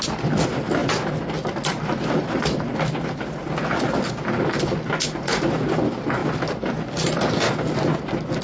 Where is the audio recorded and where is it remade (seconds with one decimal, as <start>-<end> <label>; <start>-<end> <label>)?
0.0-8.4 recorded